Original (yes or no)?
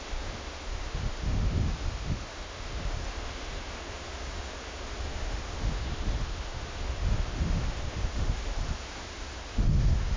no